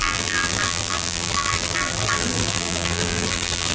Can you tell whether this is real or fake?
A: fake